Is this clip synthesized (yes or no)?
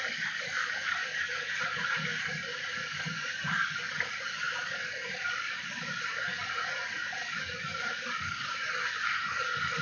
yes